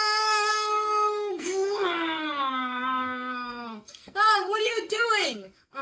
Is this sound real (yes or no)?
no